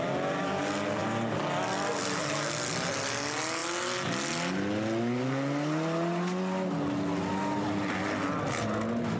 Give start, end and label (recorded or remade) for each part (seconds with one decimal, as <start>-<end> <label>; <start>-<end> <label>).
0.0-9.2 recorded